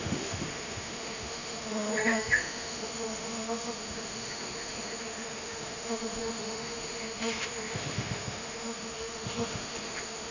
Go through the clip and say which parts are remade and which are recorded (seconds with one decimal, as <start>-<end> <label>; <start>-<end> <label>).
0.0-10.3 remade